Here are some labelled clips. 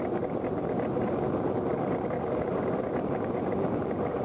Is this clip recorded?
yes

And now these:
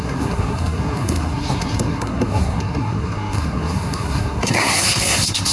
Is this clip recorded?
no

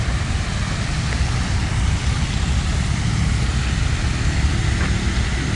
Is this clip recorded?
yes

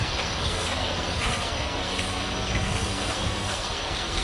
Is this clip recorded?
no